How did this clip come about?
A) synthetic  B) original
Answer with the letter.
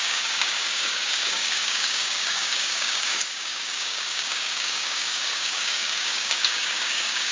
A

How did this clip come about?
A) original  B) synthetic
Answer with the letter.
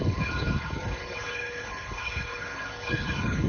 B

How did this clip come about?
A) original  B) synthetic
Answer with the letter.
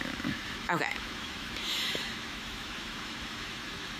B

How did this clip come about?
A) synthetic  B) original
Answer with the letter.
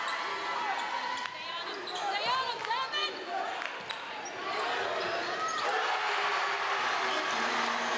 B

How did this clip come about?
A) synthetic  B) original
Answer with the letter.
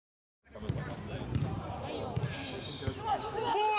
B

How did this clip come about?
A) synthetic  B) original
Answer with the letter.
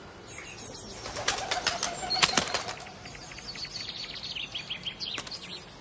B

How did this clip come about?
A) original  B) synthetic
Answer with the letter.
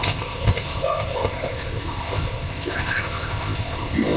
B